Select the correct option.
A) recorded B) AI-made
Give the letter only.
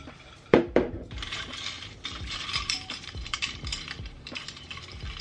B